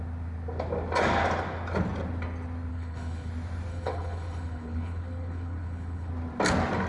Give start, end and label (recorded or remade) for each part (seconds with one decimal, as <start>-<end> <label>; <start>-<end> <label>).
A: 0.0-2.7 recorded; 2.7-3.3 remade; 3.3-3.7 recorded; 3.7-6.1 remade; 6.1-6.9 recorded